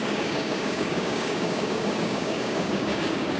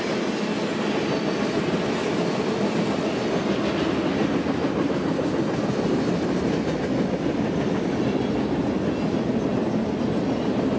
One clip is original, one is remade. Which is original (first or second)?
second